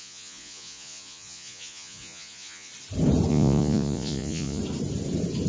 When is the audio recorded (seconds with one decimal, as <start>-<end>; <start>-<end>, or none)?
2.7-3.3; 4.6-5.5